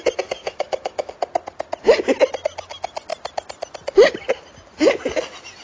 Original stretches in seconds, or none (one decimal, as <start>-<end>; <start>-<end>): 0.0-0.4; 1.1-5.6